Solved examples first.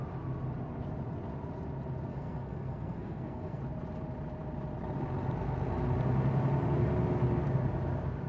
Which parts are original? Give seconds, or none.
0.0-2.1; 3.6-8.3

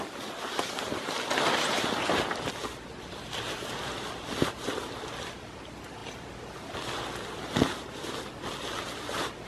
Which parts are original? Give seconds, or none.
0.0-9.5

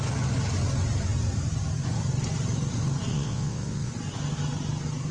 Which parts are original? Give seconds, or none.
0.0-3.1; 3.9-5.1

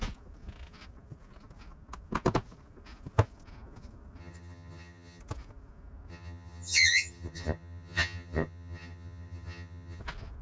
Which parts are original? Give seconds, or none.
0.0-4.2; 5.2-6.1; 10.0-10.4

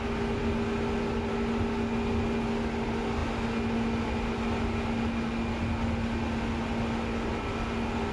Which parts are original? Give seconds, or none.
0.0-8.1

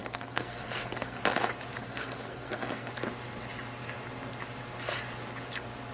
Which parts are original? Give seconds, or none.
1.2-1.8; 2.9-5.9

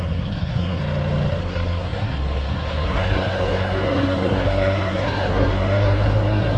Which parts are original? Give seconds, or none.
0.8-1.4